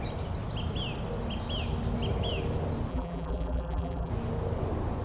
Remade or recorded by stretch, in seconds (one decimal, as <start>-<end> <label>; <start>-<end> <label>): 0.0-2.9 recorded; 2.9-4.1 remade; 4.1-5.0 recorded